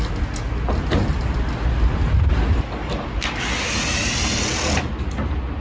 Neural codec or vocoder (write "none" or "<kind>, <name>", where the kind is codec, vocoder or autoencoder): none